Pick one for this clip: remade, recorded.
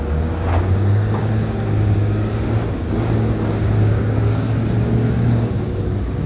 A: remade